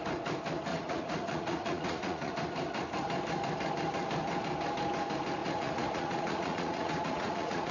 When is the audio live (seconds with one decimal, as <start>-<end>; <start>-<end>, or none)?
0.0-0.7; 2.3-5.4